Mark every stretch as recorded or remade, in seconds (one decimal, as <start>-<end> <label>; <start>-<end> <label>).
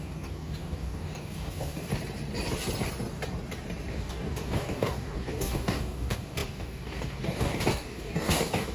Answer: 0.0-1.9 remade; 1.9-3.9 recorded; 3.9-8.7 remade